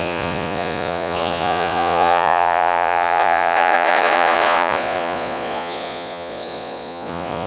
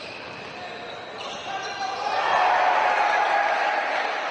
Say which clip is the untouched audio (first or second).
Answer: second